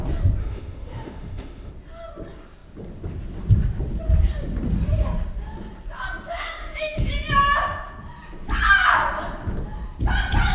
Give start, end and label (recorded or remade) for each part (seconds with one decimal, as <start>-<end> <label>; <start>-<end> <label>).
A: 0.0-0.4 recorded; 0.4-1.7 remade; 1.7-6.3 recorded; 6.3-7.1 remade; 7.1-10.5 recorded

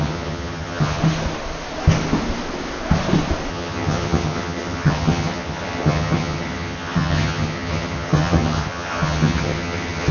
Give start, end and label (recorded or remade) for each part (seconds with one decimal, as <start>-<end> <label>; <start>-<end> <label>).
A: 0.0-1.0 remade; 1.0-3.5 recorded; 3.5-10.1 remade